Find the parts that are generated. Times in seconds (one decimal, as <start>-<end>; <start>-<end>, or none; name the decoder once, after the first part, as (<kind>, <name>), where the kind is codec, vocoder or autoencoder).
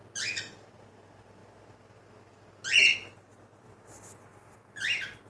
none